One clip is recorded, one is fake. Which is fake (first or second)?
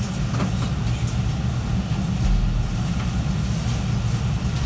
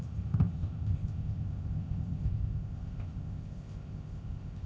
second